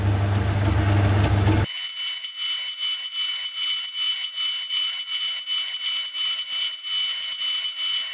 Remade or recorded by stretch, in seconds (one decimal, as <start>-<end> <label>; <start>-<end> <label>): 0.0-8.1 recorded